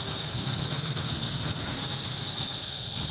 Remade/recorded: remade